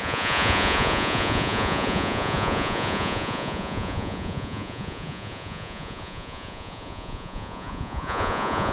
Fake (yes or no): yes